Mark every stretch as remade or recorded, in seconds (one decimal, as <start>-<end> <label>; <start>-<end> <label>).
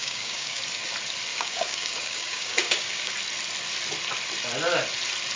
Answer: 0.0-0.6 remade; 0.6-1.3 recorded; 1.3-3.1 remade; 3.1-5.4 recorded